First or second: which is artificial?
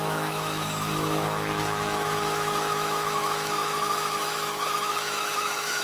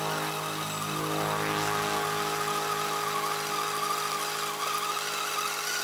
first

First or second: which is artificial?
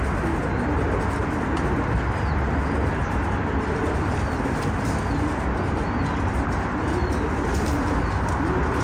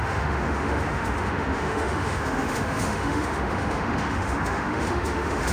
second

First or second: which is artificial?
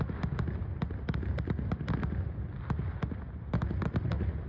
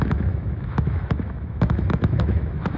second